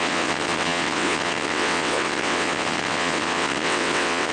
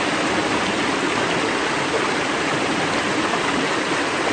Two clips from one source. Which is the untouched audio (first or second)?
second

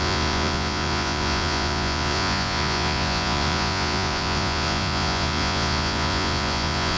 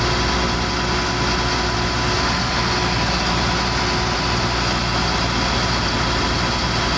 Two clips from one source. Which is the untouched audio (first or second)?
second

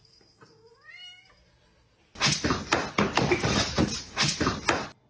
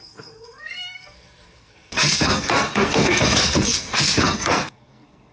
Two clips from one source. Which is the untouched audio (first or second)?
first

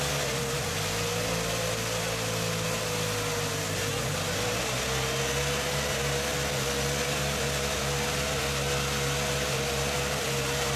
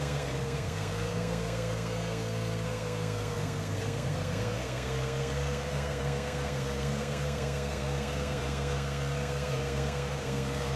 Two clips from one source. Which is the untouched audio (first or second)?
first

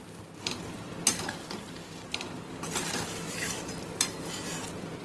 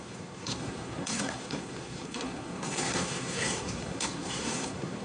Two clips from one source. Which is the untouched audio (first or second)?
first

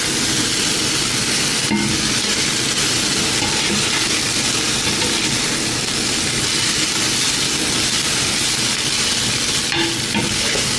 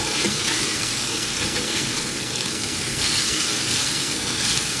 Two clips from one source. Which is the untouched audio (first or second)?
first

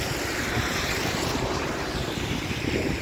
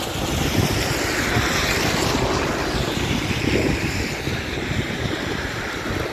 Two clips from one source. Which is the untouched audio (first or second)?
second